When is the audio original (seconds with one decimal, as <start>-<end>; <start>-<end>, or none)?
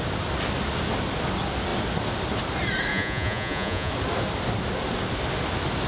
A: 0.0-2.9; 3.9-5.9